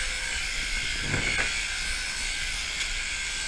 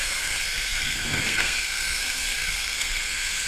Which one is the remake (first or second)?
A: second